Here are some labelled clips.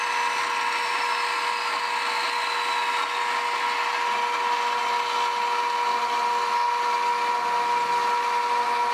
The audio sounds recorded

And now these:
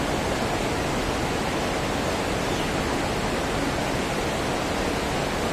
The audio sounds recorded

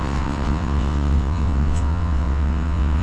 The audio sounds remade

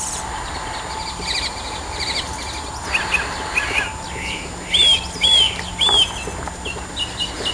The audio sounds recorded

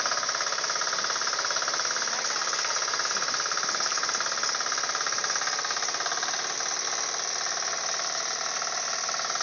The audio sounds recorded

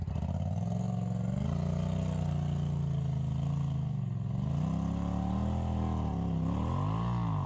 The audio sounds recorded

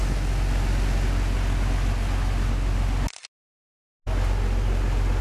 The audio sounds recorded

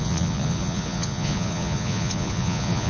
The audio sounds remade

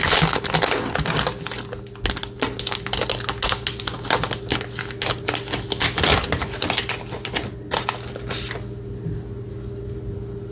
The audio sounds recorded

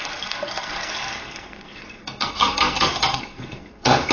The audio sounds remade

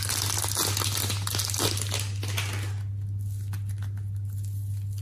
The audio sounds recorded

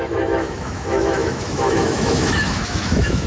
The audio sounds remade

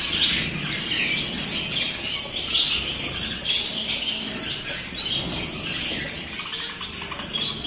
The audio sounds recorded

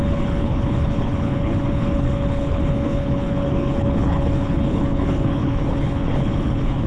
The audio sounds remade